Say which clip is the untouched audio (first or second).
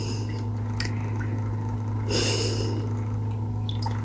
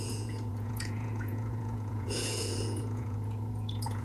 first